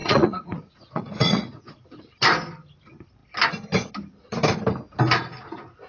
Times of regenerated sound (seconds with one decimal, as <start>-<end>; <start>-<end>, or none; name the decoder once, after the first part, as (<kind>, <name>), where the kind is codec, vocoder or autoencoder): 0.0-2.0 (vocoder, Vocos)